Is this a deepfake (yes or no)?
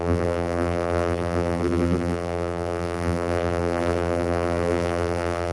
yes